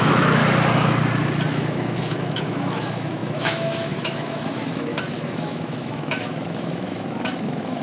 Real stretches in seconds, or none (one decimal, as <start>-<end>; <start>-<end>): 0.4-1.5